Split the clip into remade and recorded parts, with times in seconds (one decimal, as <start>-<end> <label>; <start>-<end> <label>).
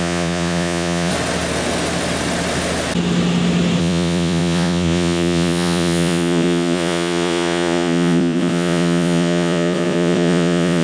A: 0.0-1.1 remade; 1.1-3.8 recorded; 3.8-10.8 remade